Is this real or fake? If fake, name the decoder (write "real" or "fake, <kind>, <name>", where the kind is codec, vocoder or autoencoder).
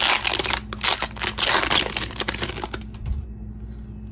real